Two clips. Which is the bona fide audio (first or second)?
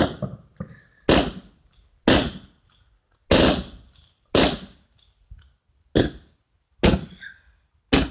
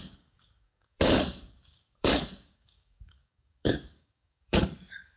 first